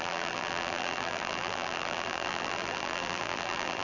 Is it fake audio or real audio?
fake